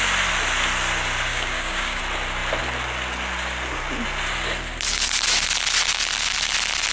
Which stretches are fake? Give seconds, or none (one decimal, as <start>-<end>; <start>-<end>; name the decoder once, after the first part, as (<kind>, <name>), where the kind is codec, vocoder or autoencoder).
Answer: 1.3-2.0 (codec, DAC)